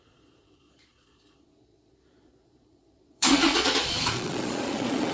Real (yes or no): no